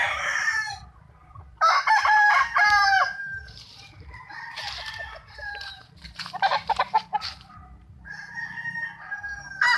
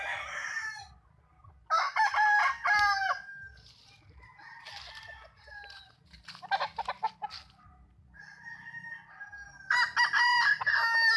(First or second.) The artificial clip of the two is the first